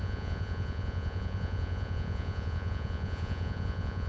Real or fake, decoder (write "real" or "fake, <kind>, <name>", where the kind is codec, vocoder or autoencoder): fake, vocoder, Vocos